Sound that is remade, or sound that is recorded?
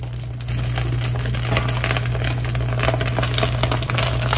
recorded